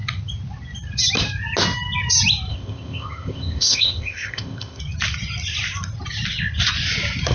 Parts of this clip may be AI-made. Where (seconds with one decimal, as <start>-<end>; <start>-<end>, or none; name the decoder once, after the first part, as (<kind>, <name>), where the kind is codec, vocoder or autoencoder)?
2.5-4.8 (codec, ZipCodec)